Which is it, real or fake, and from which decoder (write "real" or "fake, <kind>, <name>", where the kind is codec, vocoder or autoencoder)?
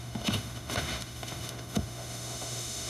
fake, autoencoder, DAC-VAE